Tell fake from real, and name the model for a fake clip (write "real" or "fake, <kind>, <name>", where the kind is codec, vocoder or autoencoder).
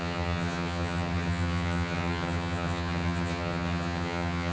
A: fake, vocoder, HiFi-GAN